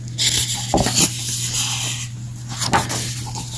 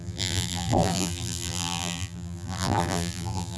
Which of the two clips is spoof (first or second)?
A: second